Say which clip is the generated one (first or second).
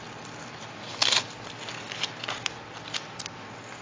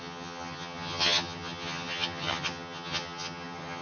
second